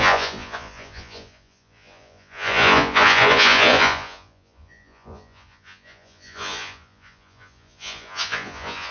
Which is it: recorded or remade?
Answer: remade